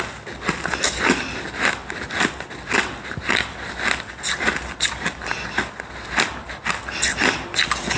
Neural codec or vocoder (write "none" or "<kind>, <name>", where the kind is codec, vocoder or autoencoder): none